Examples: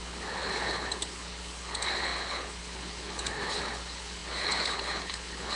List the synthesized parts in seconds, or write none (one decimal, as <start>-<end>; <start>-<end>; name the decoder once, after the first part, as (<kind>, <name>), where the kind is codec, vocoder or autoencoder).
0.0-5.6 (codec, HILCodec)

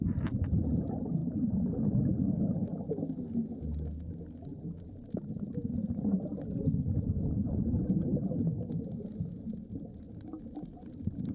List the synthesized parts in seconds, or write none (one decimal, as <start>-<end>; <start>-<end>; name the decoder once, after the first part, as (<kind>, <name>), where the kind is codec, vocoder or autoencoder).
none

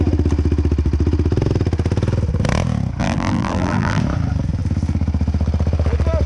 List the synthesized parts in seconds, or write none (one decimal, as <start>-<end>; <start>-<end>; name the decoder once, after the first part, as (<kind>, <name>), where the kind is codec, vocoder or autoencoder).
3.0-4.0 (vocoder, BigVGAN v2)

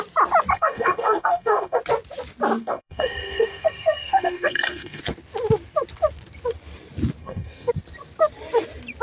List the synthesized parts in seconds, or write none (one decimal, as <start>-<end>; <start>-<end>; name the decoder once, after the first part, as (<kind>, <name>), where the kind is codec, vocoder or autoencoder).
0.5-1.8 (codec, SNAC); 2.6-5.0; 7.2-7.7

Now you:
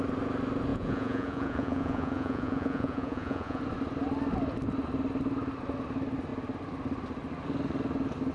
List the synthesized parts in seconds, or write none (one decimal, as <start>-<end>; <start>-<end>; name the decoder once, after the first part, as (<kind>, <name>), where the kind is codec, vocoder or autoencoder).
0.7-3.6 (vocoder, Vocos)

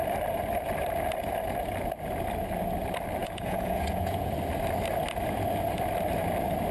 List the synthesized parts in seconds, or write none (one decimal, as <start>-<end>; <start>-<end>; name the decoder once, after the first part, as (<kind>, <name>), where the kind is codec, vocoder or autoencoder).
3.2-4.3 (vocoder, Vocos)

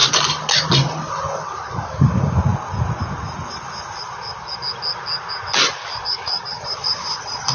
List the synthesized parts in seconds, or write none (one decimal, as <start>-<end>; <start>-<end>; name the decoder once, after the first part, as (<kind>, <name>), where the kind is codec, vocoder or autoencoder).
none